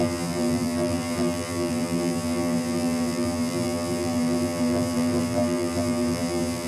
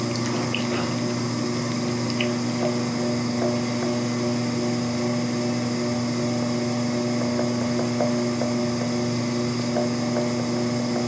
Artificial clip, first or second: first